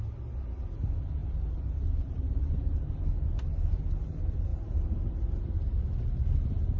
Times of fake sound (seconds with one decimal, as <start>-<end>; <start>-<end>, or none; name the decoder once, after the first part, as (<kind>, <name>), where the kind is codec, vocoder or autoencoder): none